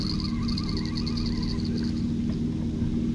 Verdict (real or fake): real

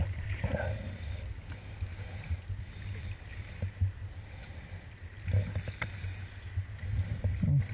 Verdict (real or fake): real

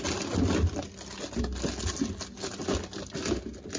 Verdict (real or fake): real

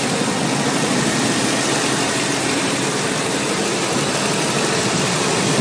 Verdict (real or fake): real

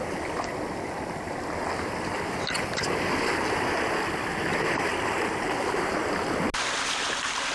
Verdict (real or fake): real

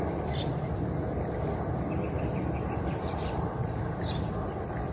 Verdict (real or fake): real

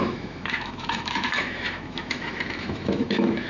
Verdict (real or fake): fake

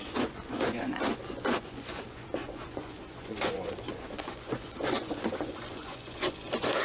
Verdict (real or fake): fake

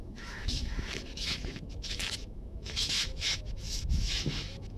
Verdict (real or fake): fake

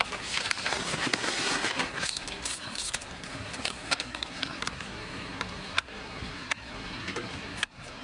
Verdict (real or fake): fake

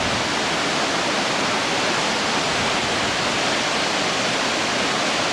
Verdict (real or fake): real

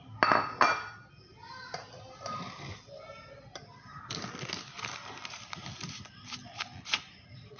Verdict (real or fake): real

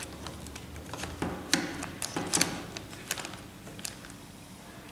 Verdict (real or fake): real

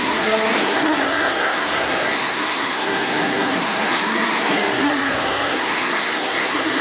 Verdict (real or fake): fake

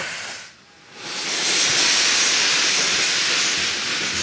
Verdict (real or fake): real